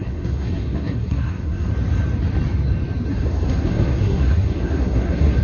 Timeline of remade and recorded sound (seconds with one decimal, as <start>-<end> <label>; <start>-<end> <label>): 0.0-1.7 remade; 1.7-3.1 recorded; 3.1-5.4 remade